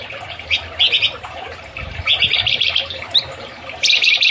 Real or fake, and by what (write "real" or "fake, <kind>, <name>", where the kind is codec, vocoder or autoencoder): real